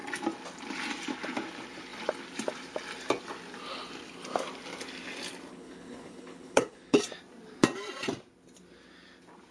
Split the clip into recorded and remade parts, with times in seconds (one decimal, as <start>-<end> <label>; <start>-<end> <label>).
0.0-5.5 recorded; 5.5-7.0 remade; 7.0-9.5 recorded